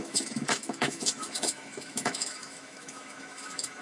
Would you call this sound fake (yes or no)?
yes